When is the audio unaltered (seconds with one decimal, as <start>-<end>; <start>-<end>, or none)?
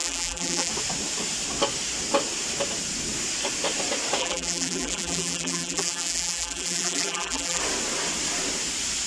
0.7-4.2; 7.6-9.1